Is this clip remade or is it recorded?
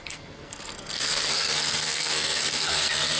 remade